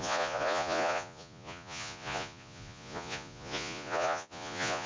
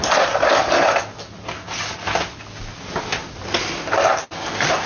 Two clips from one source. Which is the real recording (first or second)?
second